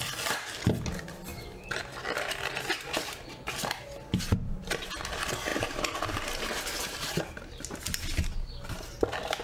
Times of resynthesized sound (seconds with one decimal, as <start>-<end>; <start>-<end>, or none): none